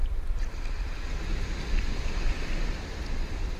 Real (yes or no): yes